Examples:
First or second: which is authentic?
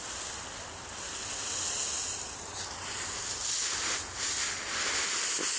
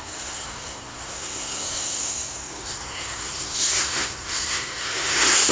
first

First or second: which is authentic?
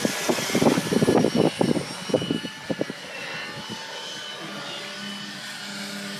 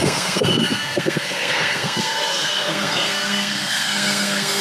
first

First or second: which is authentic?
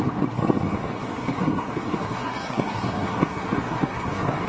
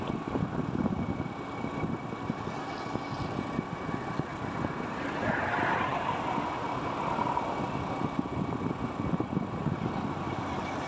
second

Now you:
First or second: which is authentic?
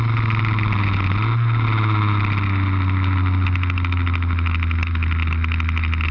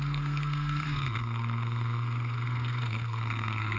first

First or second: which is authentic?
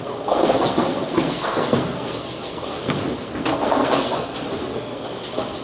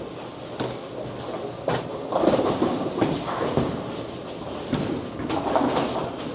second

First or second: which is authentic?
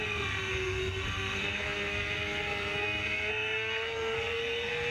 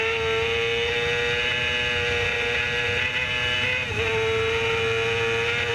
second